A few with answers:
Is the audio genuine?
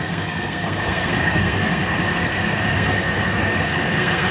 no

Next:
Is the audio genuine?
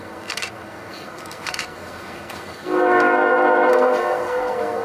no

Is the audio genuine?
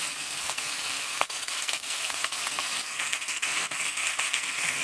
no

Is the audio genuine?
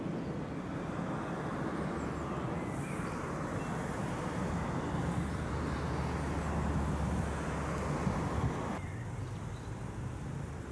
yes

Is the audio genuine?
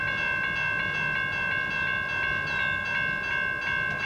yes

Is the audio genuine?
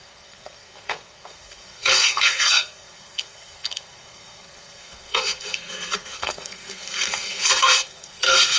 no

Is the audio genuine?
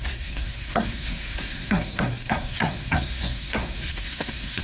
no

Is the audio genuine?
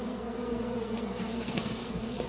no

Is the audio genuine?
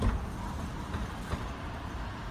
yes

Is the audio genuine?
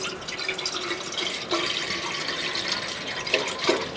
yes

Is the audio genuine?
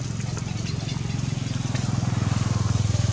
yes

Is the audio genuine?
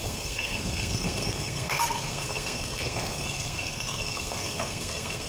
no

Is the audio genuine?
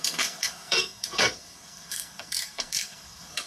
no